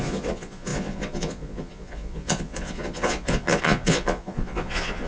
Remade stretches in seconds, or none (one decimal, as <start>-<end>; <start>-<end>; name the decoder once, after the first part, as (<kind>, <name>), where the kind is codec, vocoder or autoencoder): 0.0-5.1 (vocoder, Vocos)